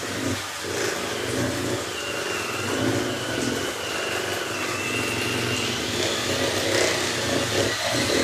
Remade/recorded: recorded